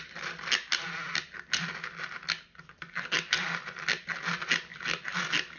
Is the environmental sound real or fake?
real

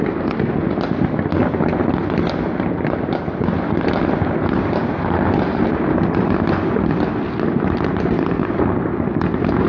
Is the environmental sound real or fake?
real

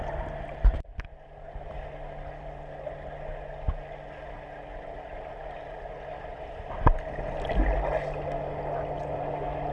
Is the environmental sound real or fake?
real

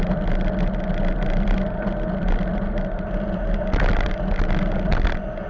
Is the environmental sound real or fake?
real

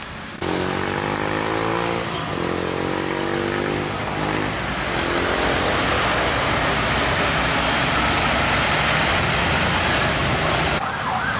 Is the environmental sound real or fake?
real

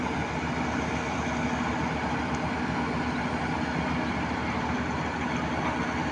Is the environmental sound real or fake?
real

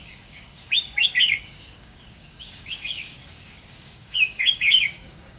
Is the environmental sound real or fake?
fake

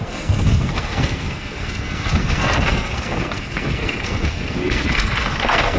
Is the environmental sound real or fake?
fake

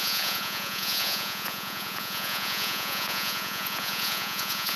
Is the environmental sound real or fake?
fake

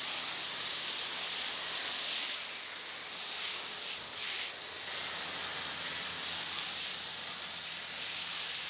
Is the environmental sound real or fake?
real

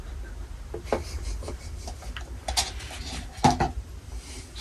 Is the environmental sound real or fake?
real